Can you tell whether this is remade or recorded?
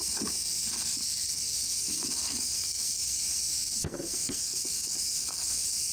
remade